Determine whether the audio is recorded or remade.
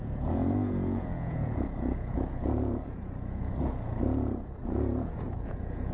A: remade